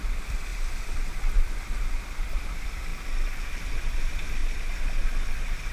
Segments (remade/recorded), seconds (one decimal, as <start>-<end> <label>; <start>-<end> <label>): 0.0-4.4 remade; 4.4-5.7 recorded